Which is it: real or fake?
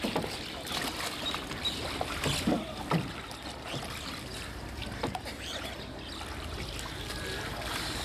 real